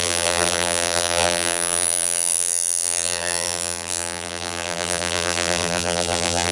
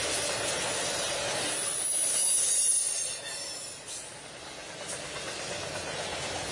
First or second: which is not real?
first